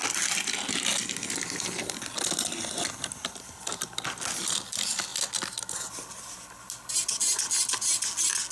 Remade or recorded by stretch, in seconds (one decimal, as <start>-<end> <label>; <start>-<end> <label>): 0.0-8.5 recorded